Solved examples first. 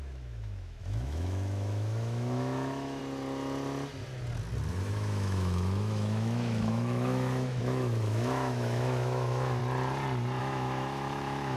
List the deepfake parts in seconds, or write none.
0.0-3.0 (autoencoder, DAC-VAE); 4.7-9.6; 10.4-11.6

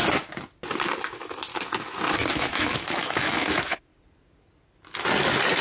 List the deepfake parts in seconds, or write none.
1.1-1.5 (autoencoder, DAC-VAE); 2.3-3.9

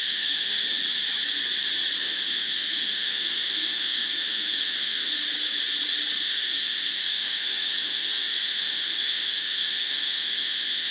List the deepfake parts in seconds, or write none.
0.0-0.8 (autoencoder, DAC-VAE); 2.0-5.1; 6.2-10.9

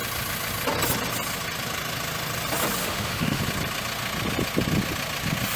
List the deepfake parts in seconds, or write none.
2.8-3.4 (autoencoder, DAC-VAE)

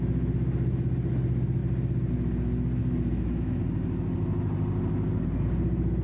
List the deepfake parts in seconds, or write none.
2.8-3.6 (autoencoder, DAC-VAE)

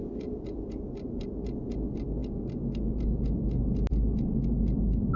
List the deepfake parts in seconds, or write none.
none

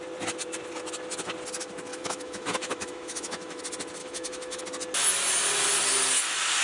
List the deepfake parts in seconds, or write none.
1.9-3.6 (autoencoder, DAC-VAE); 4.0-4.6